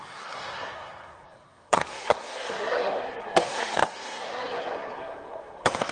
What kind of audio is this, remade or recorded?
remade